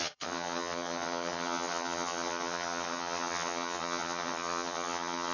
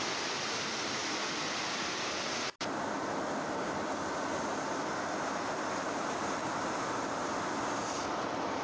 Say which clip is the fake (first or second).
first